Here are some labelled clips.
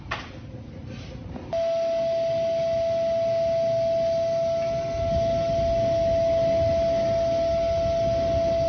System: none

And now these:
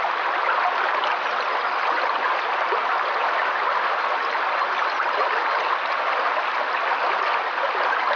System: none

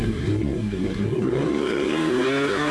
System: codec, SNAC